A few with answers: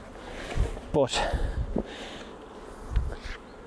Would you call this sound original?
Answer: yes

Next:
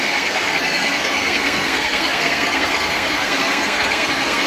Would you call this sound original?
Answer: no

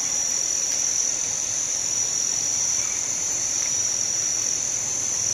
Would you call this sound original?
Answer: no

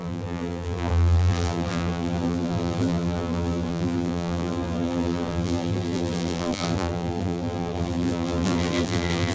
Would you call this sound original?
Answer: no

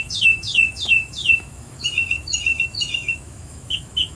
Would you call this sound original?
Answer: no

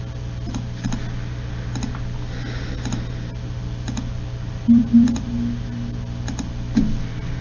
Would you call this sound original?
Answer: yes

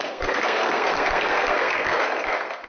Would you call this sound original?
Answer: no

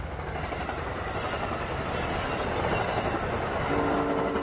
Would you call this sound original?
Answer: yes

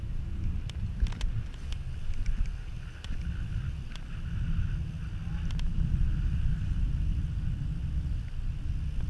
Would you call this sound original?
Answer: yes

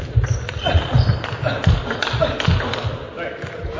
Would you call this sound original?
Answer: yes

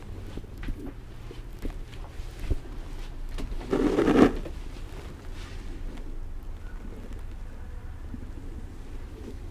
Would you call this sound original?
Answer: yes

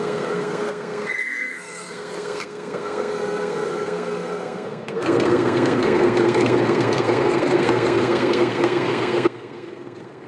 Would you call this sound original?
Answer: no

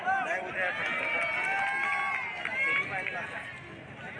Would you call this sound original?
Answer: yes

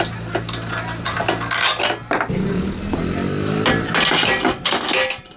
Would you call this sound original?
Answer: yes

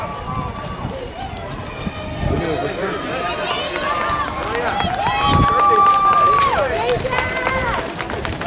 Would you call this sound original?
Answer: yes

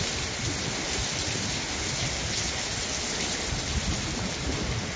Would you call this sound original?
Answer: yes